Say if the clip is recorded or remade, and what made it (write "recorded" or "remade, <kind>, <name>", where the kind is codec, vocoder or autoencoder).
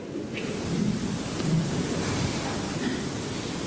recorded